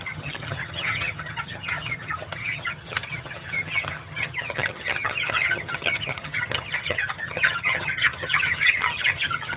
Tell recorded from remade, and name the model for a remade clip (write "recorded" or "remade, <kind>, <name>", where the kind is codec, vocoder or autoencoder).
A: remade, vocoder, HiFi-GAN